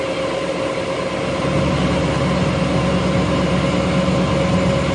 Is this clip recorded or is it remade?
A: recorded